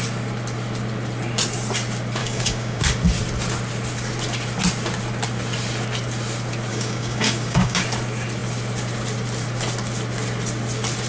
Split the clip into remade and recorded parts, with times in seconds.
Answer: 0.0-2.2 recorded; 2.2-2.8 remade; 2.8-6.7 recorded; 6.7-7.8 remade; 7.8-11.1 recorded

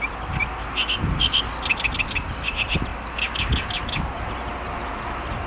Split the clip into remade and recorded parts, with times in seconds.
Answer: 0.0-5.5 recorded

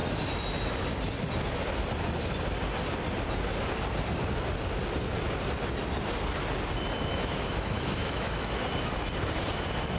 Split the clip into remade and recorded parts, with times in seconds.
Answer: 0.0-7.1 recorded; 7.1-8.5 remade; 8.5-10.0 recorded

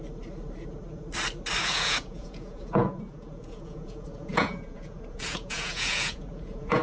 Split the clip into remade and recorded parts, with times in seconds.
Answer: 0.0-1.6 recorded; 1.6-6.8 remade